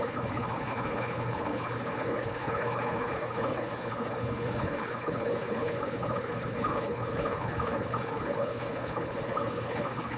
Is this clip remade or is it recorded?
remade